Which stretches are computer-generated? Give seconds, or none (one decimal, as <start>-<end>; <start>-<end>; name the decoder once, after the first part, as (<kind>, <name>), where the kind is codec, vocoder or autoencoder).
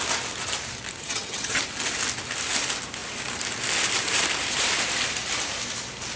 1.0-1.6 (vocoder, HiFi-GAN)